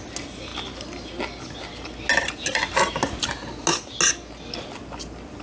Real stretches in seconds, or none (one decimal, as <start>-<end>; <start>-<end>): 0.0-5.4